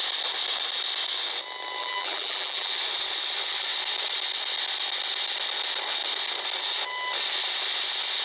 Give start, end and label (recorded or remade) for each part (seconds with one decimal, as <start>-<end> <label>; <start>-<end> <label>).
0.0-1.8 recorded; 1.8-2.7 remade; 2.7-8.2 recorded